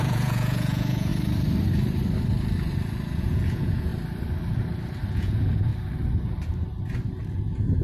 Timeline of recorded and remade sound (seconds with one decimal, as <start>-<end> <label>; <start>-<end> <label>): 0.0-1.1 remade; 1.1-3.2 recorded; 3.2-3.9 remade; 3.9-5.1 recorded; 5.1-5.7 remade; 5.7-7.3 recorded; 7.3-7.8 remade